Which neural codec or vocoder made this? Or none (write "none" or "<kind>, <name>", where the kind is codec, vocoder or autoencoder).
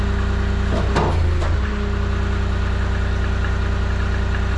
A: none